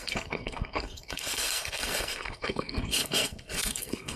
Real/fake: fake